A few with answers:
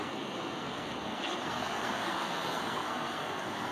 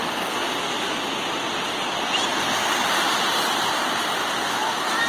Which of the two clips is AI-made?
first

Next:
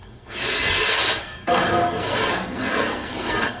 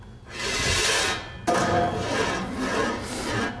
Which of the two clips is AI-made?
first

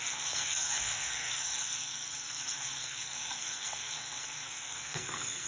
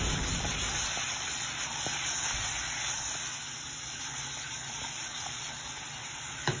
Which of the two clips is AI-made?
first